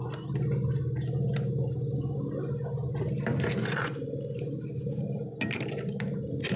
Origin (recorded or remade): recorded